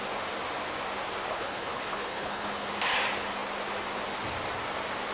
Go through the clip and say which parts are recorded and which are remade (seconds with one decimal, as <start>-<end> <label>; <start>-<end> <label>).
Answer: 0.0-1.3 recorded; 1.3-2.7 remade; 2.7-5.1 recorded